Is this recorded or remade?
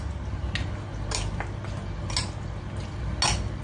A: recorded